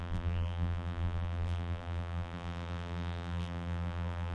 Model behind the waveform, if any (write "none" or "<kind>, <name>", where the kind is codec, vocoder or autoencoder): vocoder, BigVGAN v2